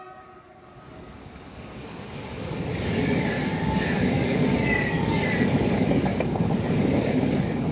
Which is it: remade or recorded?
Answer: remade